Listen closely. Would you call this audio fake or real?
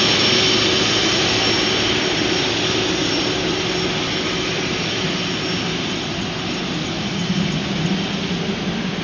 real